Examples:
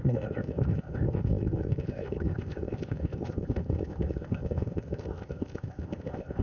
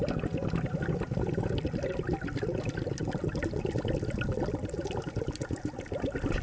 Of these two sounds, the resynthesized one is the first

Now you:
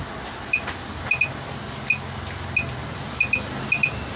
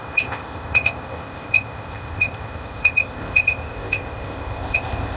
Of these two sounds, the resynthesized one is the second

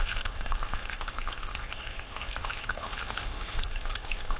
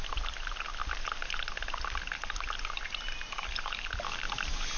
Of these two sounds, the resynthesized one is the first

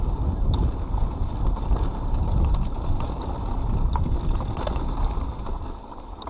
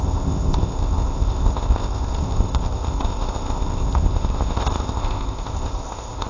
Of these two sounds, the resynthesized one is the second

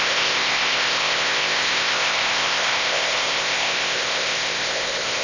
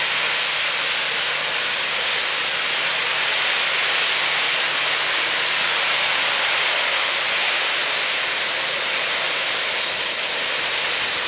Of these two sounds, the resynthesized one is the first